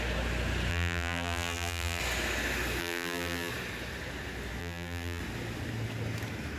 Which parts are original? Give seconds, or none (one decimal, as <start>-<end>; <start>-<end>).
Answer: 0.0-0.7; 2.0-2.8; 3.5-4.6; 5.2-6.6